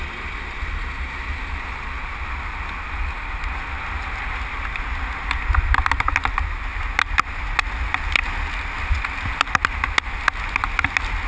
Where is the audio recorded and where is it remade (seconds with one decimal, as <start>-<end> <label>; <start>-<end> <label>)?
0.0-11.3 recorded